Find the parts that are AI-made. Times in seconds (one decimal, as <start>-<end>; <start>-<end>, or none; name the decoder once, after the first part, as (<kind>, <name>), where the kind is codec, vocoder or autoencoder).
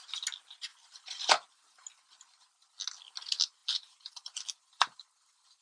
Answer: 0.7-1.3 (vocoder, BigVGAN v2); 3.6-5.6